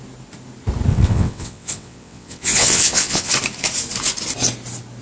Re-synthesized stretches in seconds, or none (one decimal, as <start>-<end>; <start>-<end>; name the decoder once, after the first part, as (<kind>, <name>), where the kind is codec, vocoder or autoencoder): 0.9-3.3 (vocoder, WaveNeXt)